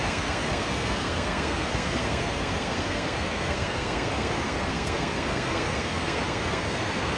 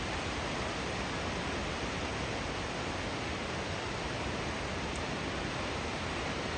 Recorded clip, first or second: second